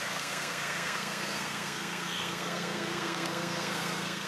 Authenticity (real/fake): fake